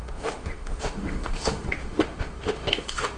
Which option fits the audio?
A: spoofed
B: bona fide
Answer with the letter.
A